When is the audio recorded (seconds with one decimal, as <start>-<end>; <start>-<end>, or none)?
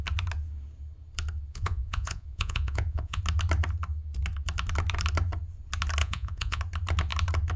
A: 0.0-1.5; 3.2-6.0; 6.6-7.6